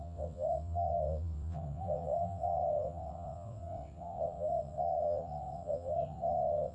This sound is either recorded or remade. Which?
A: remade